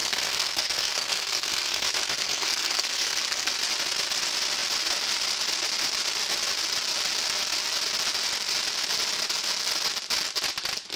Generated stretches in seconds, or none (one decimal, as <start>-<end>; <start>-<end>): 0.0-3.5